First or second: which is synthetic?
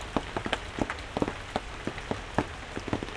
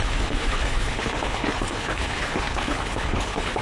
second